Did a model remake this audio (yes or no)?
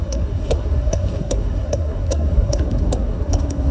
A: yes